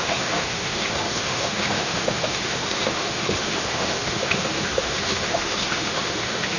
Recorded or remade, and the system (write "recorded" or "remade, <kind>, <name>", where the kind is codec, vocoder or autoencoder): remade, autoencoder, DAC-VAE